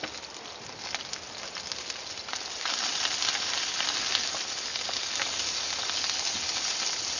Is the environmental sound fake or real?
real